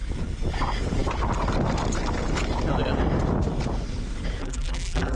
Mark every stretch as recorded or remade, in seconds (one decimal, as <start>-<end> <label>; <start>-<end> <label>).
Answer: 0.0-4.4 recorded; 4.4-5.2 remade